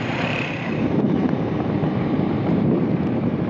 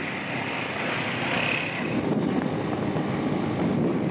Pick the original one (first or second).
second